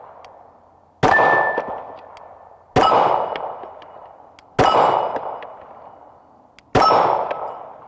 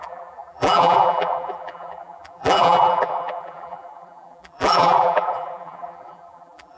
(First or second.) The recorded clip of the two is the first